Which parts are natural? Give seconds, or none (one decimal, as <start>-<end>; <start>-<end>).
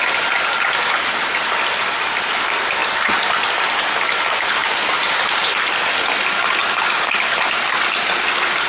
0.0-2.8; 3.5-4.6; 5.2-6.6; 7.6-8.7